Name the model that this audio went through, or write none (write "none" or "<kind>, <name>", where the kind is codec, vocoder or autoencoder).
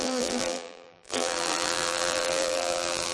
vocoder, BigVGAN v2